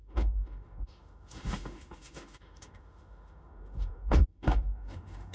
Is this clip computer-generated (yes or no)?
yes